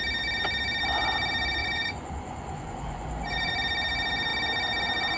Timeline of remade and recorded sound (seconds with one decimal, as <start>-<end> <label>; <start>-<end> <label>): 0.0-1.6 recorded; 1.6-3.5 remade; 3.5-5.2 recorded